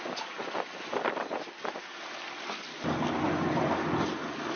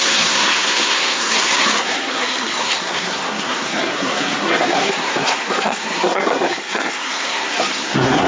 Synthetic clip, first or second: second